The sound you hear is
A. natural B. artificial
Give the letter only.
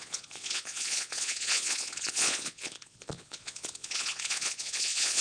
B